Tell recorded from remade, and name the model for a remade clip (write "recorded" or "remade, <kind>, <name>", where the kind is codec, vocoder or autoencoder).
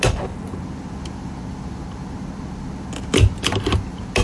recorded